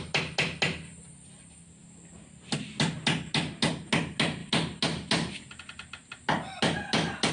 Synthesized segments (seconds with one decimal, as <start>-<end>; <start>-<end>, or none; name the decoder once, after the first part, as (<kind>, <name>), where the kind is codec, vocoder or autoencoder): none